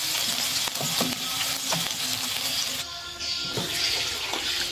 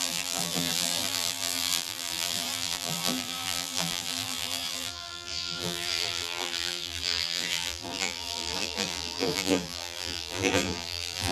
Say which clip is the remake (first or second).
second